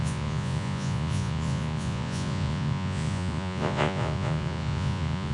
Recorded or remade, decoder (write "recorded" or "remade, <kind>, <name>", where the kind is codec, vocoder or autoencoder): remade, vocoder, Vocos